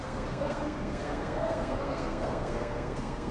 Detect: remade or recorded remade